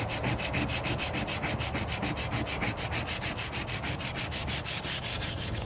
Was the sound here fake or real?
real